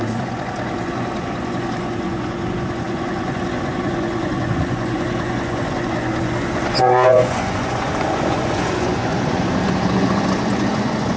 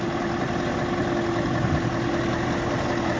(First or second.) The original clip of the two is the second